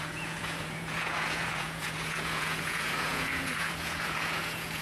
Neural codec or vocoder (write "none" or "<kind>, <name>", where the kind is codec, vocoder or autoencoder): vocoder, Vocos